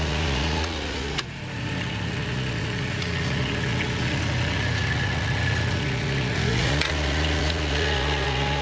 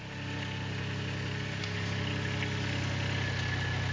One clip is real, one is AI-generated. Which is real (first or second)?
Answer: second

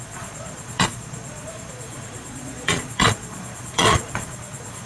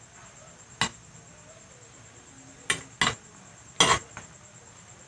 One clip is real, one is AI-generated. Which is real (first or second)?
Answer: second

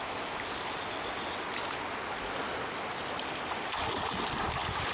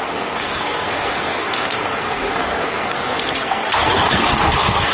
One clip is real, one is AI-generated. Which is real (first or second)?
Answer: first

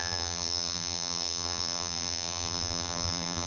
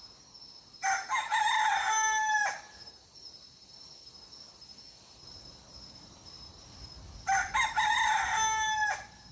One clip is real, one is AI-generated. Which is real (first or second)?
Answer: second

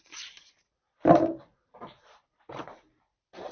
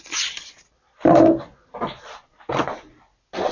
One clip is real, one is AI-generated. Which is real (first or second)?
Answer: second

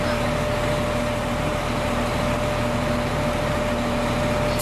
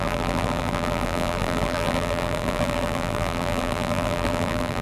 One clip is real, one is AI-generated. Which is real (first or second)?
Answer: first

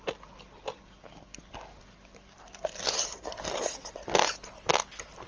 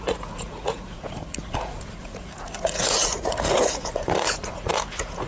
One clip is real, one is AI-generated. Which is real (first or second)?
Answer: first